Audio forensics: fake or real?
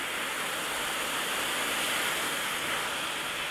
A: real